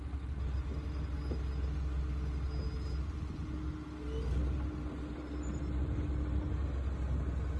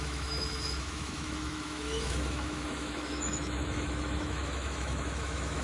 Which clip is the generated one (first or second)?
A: second